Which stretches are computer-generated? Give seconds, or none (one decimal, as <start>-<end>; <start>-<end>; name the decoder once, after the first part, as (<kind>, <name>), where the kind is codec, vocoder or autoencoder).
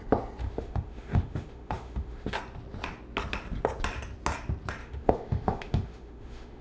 0.4-2.4 (autoencoder, DAC-VAE); 4.8-6.6